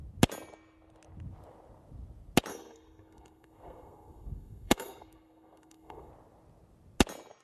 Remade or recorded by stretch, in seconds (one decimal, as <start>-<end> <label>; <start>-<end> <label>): 0.0-2.5 recorded; 2.5-6.1 remade; 6.1-7.4 recorded